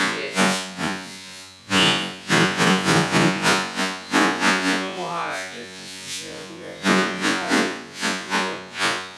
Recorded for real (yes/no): no